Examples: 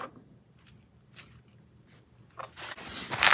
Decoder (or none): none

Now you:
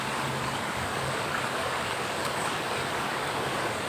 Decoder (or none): codec, DAC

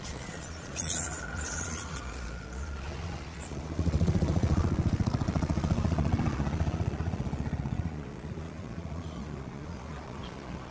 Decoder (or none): vocoder, Vocos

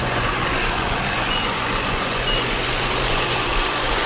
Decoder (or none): vocoder, Vocos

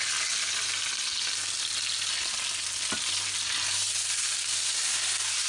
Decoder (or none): none